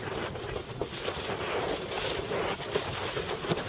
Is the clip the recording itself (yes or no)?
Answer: yes